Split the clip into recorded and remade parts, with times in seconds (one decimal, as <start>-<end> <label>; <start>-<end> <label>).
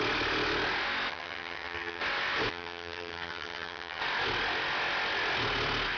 0.0-1.1 recorded; 1.1-2.0 remade; 2.0-2.5 recorded; 2.5-4.0 remade; 4.0-6.0 recorded